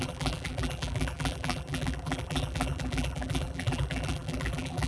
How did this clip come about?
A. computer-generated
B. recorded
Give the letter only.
A